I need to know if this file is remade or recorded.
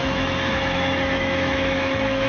remade